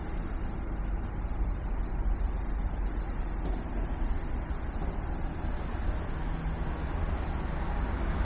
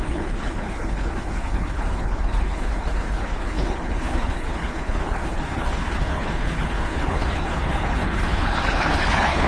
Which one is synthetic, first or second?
second